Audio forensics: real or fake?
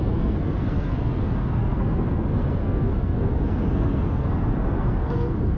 fake